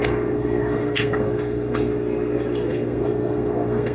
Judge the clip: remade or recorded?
remade